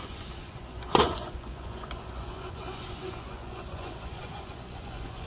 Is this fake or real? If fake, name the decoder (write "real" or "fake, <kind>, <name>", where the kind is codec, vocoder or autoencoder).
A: fake, vocoder, Vocos